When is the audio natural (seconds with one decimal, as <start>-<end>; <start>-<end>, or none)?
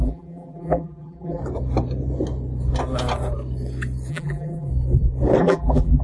1.4-4.1; 4.7-5.4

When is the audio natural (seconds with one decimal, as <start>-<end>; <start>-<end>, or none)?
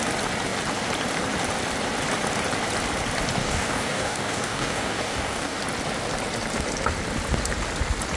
0.0-3.4; 5.6-8.2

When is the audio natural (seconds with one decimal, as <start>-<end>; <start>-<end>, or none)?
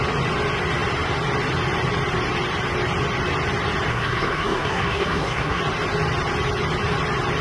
0.0-3.9; 5.6-7.4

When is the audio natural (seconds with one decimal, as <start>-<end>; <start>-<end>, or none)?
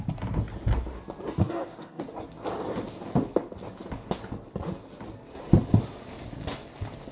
0.0-1.4; 2.0-7.1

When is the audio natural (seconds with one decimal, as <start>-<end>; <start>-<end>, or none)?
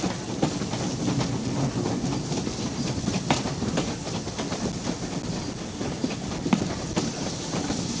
0.0-8.0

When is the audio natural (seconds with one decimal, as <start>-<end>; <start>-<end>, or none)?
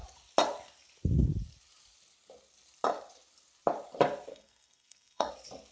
0.0-4.3; 5.3-5.7